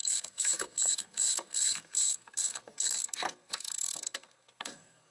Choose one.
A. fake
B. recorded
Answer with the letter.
A